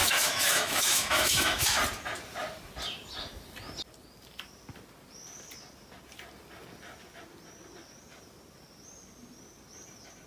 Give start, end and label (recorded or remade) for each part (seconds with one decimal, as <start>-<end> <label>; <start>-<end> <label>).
0.0-1.8 remade; 1.8-10.3 recorded